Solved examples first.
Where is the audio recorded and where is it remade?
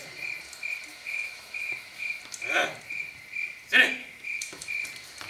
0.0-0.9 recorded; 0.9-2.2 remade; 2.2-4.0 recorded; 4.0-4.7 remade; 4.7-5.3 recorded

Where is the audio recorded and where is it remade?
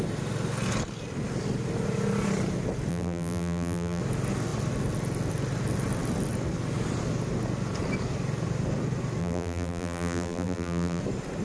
0.0-2.9 recorded; 2.9-4.0 remade; 4.0-9.2 recorded; 9.2-11.0 remade; 11.0-11.4 recorded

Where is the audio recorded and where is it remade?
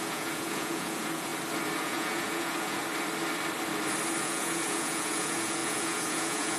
0.0-1.3 remade; 1.3-1.8 recorded; 1.8-2.8 remade; 2.8-4.2 recorded; 4.2-6.6 remade